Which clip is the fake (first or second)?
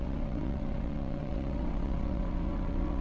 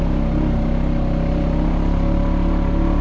first